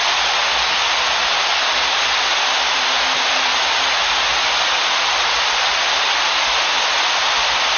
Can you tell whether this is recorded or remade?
recorded